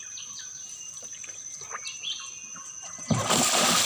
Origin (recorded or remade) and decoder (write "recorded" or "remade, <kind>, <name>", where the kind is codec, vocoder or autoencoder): recorded